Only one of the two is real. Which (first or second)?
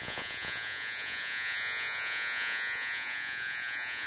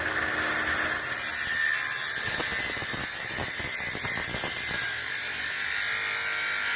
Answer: second